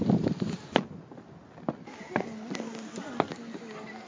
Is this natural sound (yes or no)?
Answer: yes